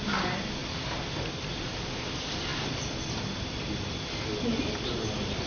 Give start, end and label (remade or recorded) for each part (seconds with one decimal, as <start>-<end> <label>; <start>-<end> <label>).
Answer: 0.0-2.5 recorded; 2.5-5.5 remade